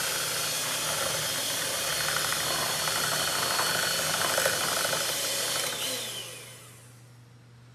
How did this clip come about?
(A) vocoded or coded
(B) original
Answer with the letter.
B